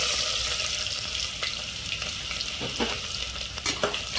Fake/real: real